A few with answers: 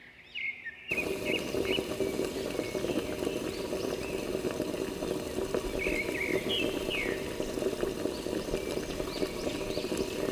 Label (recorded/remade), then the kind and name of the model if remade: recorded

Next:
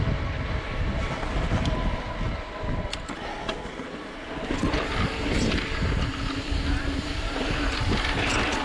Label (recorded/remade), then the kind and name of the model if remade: recorded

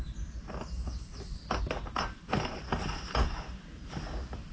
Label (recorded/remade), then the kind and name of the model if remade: recorded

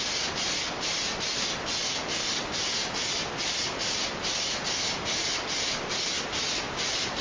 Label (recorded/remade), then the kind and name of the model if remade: recorded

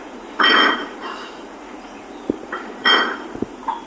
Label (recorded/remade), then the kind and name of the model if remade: remade, vocoder, Vocos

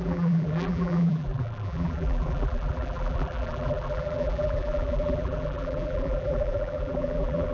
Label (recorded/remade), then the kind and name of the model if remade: remade, vocoder, BigVGAN v2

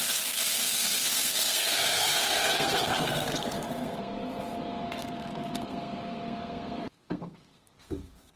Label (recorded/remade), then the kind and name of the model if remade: remade, codec, SNAC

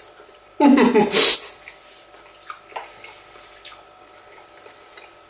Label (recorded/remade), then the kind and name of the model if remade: recorded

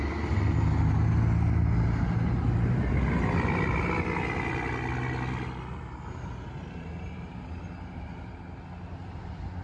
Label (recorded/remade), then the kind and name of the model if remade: recorded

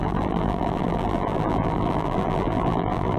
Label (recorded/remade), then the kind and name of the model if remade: remade, vocoder, BigVGAN v2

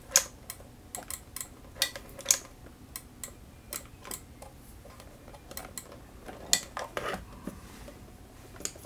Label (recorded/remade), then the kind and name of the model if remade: recorded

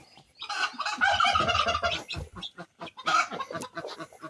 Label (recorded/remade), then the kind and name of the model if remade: recorded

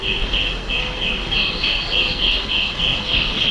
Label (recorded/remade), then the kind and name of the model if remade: remade, codec, SNAC